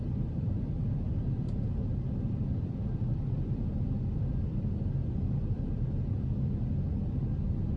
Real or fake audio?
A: fake